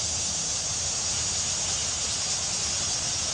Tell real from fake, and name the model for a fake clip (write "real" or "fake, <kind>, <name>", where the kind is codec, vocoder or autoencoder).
real